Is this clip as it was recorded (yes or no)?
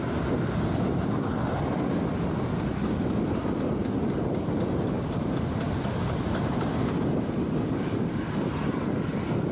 yes